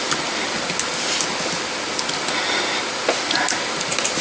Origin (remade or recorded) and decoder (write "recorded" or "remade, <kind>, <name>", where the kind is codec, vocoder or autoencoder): recorded